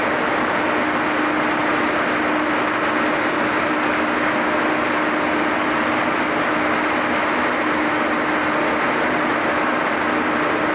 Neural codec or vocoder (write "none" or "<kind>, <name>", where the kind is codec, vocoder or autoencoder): none